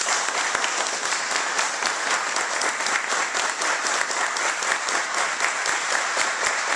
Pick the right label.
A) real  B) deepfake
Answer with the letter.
A